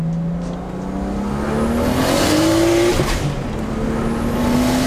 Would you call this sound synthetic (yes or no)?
no